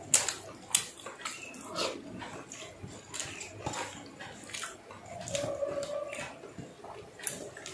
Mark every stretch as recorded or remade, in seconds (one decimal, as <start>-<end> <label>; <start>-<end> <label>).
0.0-7.7 recorded